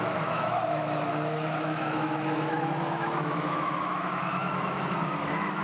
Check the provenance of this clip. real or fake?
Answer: fake